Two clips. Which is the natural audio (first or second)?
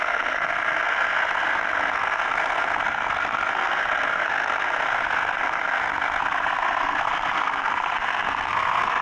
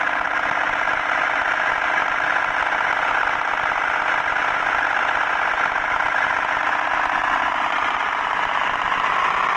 second